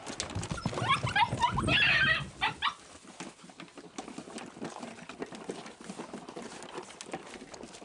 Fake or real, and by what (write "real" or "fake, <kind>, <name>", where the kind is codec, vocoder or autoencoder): real